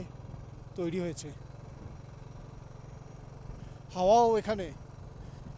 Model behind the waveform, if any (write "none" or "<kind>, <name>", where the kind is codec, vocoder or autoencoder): none